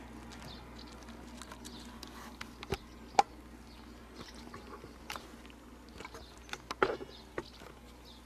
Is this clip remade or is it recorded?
recorded